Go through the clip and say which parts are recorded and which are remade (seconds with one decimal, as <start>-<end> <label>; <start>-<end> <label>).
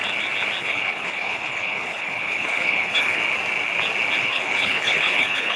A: 0.0-0.6 recorded; 0.6-3.2 remade; 3.2-4.2 recorded; 4.2-5.6 remade